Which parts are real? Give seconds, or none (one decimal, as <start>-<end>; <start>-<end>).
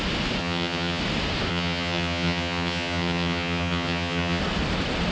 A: 0.0-0.4; 1.0-1.5; 4.4-5.1